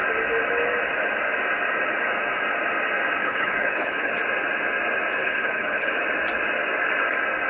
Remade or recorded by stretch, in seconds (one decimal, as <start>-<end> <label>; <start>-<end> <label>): 0.0-3.2 recorded; 3.2-4.1 remade; 4.1-5.2 recorded; 5.2-5.9 remade; 5.9-7.5 recorded